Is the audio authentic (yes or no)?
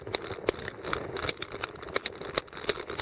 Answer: yes